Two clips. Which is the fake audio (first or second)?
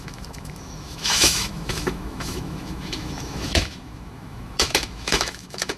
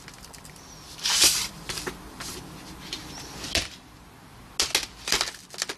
first